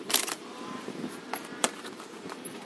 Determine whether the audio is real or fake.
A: fake